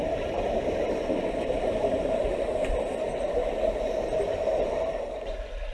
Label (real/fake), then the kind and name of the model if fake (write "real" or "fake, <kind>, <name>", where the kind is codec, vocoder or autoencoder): real